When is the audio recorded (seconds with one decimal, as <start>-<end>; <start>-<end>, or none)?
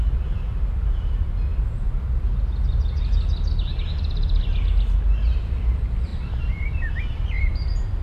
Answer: 1.5-5.3